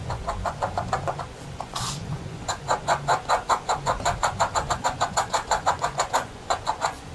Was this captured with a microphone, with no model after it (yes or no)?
no